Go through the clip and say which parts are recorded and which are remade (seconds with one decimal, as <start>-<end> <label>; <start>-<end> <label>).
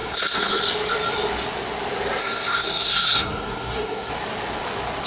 0.0-0.6 remade; 0.6-2.2 recorded; 2.2-4.1 remade; 4.1-5.1 recorded